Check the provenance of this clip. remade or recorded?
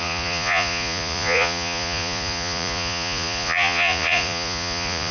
remade